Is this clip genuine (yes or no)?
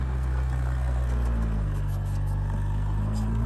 no